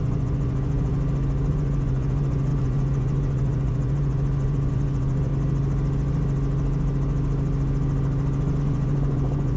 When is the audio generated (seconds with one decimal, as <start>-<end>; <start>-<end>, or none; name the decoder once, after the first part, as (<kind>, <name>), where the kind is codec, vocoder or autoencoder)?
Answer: 0.0-0.9 (vocoder, Vocos); 1.5-5.3; 8.6-9.6